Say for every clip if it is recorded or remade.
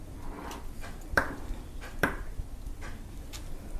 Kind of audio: remade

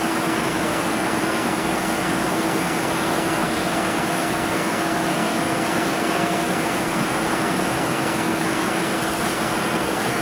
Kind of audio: remade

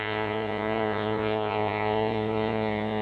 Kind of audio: remade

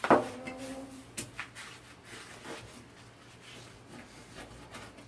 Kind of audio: recorded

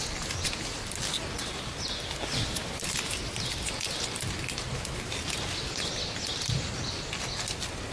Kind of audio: recorded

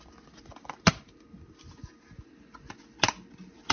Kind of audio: recorded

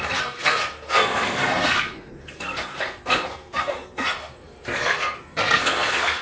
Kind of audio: remade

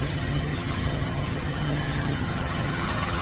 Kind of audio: remade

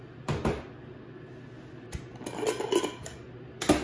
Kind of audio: recorded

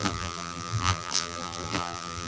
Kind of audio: remade